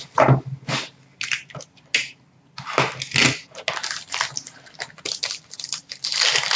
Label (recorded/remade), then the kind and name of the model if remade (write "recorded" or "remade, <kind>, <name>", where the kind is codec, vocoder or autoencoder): recorded